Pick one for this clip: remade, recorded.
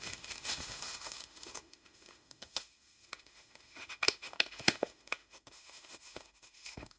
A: remade